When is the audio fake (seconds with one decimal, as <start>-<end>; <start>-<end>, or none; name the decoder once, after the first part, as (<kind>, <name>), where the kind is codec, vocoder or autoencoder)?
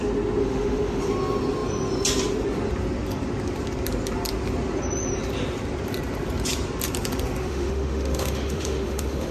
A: 0.4-1.0 (autoencoder, DAC-VAE); 7.4-9.3